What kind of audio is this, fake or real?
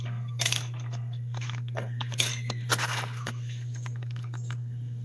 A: fake